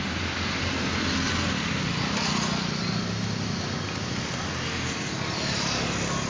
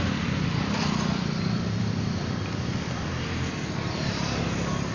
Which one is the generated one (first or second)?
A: second